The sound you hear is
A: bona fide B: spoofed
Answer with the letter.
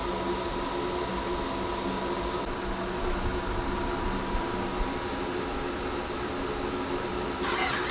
A